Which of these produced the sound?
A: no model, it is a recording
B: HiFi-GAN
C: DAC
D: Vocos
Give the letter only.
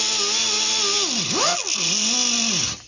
A